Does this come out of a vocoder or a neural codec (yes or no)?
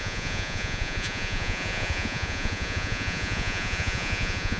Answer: yes